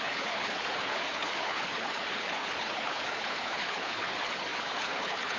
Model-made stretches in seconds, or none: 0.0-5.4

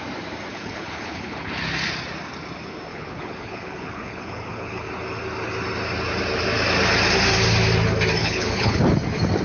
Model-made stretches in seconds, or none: 0.5-1.5; 2.9-4.9; 8.2-8.8

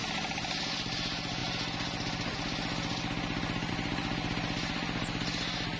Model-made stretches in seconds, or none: none

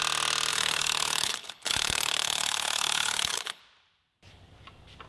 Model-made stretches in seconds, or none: 0.5-3.6

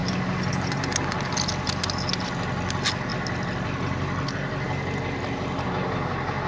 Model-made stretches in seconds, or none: none

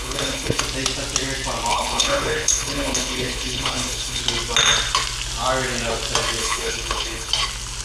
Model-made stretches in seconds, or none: 0.0-0.6; 1.7-4.2; 6.4-7.3